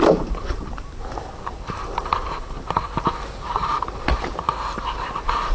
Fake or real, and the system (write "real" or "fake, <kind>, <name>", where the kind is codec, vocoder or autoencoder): fake, vocoder, BigVGAN v2